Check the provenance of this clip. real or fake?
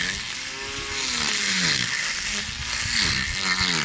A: real